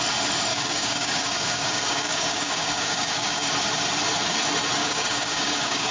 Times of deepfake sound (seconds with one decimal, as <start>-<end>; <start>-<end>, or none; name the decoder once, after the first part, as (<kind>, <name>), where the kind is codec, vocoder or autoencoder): 0.5-3.5 (codec, DAC); 4.8-5.9

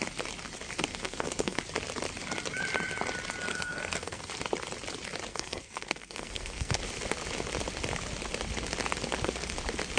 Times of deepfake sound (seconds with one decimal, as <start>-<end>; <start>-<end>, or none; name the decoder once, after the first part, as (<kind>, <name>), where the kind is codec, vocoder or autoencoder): 0.9-1.6 (codec, SNAC); 3.5-4.3; 5.3-6.8